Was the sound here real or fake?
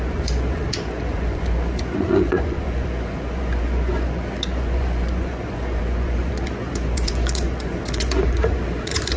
fake